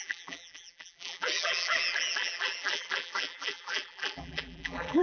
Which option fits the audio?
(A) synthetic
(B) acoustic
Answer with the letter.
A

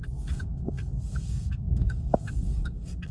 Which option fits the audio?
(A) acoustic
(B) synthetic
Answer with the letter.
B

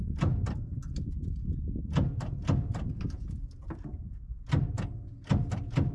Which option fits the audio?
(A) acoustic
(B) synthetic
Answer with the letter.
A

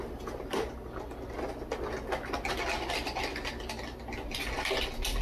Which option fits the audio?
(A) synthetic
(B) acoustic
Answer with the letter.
B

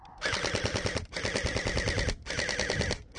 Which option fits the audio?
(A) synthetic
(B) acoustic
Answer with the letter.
B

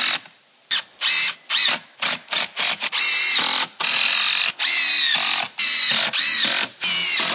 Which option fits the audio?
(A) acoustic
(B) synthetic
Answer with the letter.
A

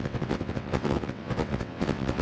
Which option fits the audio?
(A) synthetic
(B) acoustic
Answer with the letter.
A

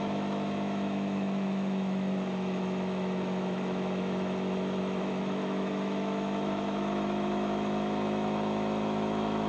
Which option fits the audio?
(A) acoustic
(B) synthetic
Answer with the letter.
B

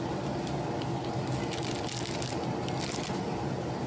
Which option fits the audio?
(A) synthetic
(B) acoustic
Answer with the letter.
B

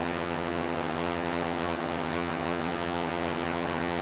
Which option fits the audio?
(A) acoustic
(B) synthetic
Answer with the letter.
B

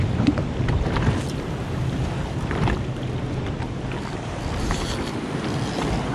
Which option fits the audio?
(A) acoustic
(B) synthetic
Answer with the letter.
A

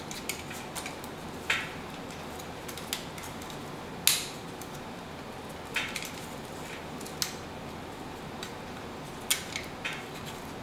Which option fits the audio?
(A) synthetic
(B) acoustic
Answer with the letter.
B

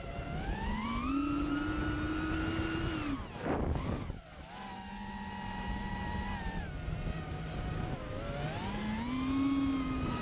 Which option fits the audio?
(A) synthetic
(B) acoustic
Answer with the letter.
B